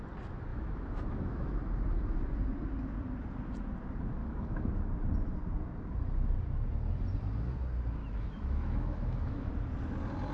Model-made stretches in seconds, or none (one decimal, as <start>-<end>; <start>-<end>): 0.5-1.5; 4.2-4.7; 8.0-9.5